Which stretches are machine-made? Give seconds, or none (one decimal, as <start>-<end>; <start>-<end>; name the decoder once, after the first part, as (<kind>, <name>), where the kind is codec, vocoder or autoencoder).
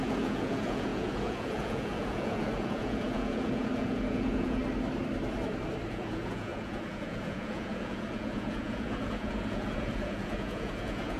0.0-4.6 (vocoder, Vocos); 5.9-11.2